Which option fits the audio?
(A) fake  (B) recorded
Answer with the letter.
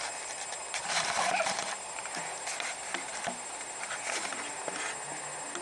B